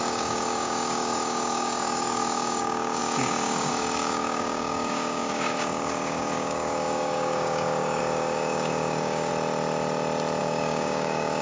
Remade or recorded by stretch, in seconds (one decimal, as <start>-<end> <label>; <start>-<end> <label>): 0.0-9.3 remade; 9.3-10.4 recorded; 10.4-11.4 remade

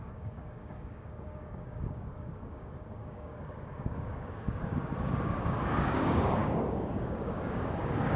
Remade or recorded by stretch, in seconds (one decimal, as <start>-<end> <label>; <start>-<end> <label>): 0.0-8.2 remade

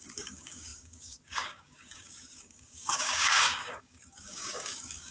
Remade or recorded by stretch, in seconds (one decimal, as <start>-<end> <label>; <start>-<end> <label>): 0.0-5.1 remade

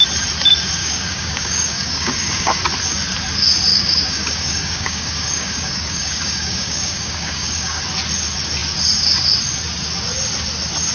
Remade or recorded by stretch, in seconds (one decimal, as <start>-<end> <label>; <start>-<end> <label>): 0.0-0.8 recorded; 0.8-2.6 remade; 2.6-3.7 recorded; 3.7-7.8 remade; 7.8-10.9 recorded

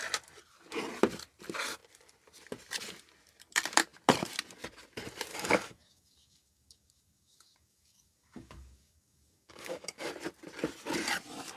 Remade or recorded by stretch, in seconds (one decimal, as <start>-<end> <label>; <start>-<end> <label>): 0.0-5.3 recorded; 5.3-10.1 remade; 10.1-11.6 recorded

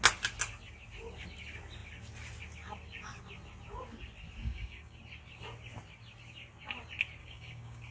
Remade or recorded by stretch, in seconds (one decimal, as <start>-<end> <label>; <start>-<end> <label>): 0.0-4.4 recorded; 4.4-5.0 remade; 5.0-7.2 recorded; 7.2-7.9 remade

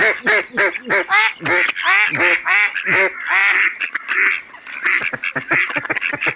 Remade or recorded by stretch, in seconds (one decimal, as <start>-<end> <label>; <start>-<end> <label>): 0.0-6.4 recorded

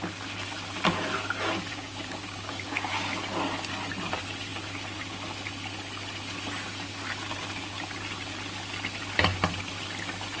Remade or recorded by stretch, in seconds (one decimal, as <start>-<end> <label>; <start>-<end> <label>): 0.0-1.7 recorded; 1.7-2.9 remade; 2.9-10.4 recorded